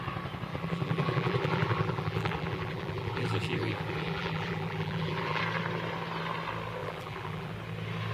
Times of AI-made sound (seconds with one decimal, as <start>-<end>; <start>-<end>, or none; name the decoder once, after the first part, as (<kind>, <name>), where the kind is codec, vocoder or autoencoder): 0.5-5.4 (vocoder, BigVGAN v2); 6.8-7.5

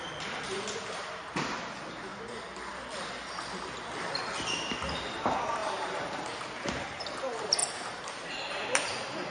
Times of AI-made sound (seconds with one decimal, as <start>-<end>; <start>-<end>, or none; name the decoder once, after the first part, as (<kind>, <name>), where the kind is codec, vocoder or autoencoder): 0.0-2.1 (vocoder, BigVGAN v2); 5.0-9.3

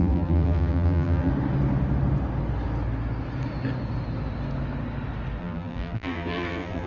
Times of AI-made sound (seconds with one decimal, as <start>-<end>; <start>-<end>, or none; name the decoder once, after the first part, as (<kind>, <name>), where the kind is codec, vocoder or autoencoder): 0.0-1.3 (vocoder, BigVGAN v2); 5.4-6.9

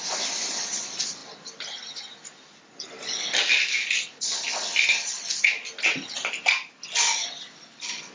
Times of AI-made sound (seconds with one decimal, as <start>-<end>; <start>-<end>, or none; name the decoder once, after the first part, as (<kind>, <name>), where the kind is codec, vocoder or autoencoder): none

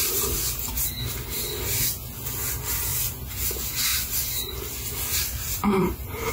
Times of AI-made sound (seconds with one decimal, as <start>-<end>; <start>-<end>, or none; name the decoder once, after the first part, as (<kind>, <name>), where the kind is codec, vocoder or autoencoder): 2.9-3.5 (vocoder, BigVGAN v2); 3.9-6.3

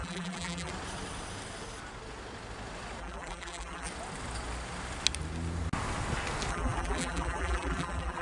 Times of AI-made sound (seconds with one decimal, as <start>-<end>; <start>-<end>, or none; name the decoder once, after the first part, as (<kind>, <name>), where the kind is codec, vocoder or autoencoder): 0.0-0.7 (vocoder, BigVGAN v2); 3.0-3.9; 6.5-8.2

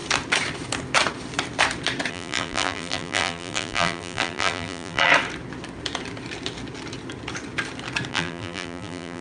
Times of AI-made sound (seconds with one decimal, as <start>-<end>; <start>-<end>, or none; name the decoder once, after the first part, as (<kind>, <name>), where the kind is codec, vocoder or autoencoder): 2.1-5.1 (vocoder, BigVGAN v2); 8.1-9.2